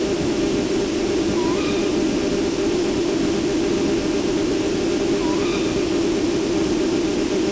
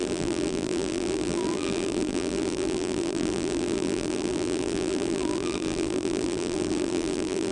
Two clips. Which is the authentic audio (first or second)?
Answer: first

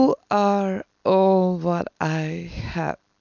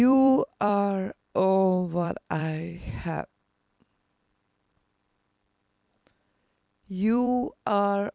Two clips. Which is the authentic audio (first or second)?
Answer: first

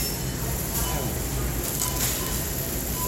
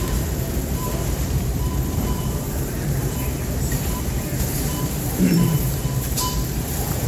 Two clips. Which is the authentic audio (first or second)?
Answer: first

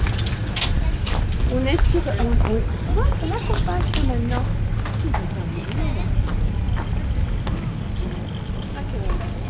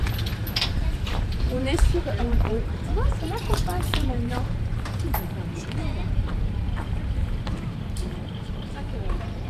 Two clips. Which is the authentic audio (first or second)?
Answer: first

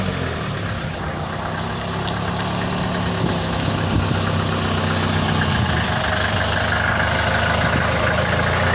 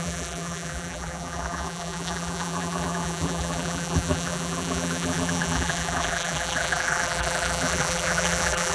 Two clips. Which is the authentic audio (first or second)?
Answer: first